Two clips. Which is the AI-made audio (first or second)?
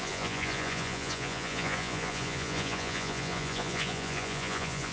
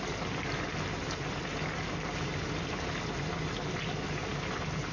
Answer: first